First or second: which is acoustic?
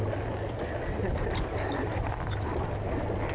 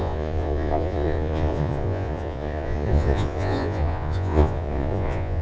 first